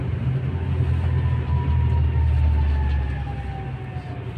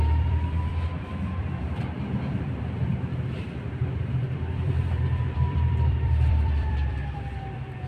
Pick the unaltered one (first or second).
first